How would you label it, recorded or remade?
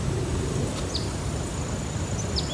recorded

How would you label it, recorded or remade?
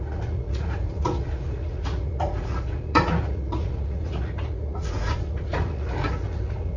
remade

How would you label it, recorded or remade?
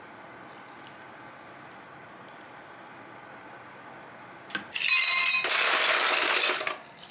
recorded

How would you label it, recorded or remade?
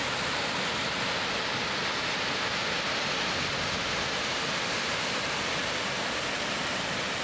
recorded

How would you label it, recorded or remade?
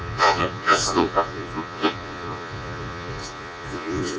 remade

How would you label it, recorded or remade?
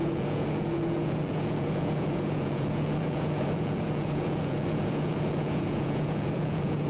remade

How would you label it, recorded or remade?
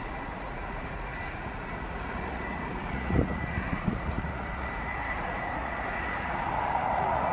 remade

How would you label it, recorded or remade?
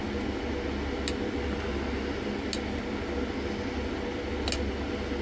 recorded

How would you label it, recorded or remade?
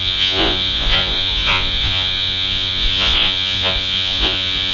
remade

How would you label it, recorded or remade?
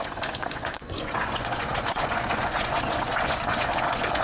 remade